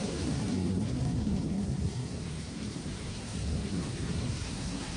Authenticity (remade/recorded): remade